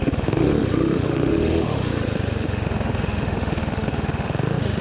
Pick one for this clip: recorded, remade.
remade